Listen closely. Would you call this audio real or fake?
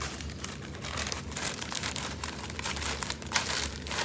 fake